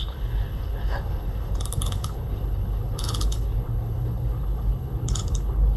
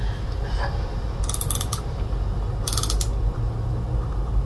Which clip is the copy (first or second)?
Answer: first